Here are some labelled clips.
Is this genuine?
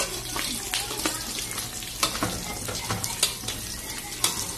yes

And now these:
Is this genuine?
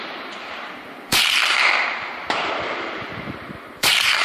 no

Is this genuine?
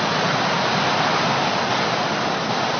yes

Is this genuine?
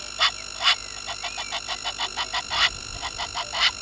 no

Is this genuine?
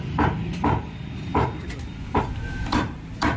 no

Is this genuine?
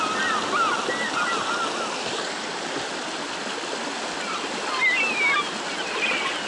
yes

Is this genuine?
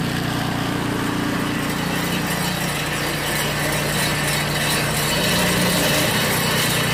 yes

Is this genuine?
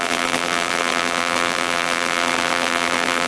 no